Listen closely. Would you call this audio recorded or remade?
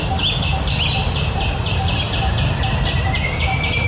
recorded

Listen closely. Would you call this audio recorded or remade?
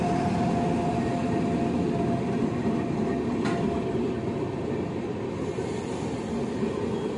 recorded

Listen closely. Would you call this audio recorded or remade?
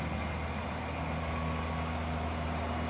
recorded